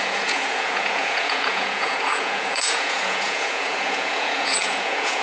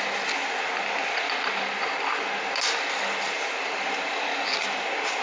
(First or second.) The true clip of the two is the second